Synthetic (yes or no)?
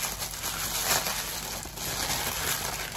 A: no